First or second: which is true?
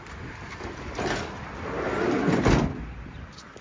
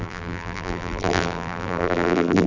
first